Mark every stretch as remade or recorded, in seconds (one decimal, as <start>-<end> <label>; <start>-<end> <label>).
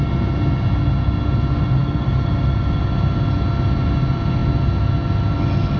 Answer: 0.0-5.8 recorded